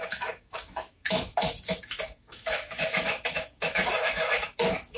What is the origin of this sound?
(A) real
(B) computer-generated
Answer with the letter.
B